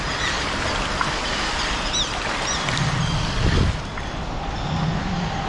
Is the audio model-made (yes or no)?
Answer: no